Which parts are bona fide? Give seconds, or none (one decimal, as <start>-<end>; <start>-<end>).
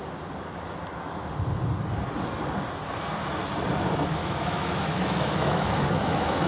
0.0-4.2